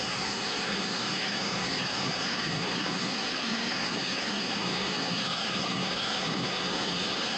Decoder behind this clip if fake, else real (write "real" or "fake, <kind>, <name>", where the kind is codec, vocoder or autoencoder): fake, codec, SNAC